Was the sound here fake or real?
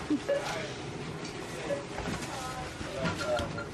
real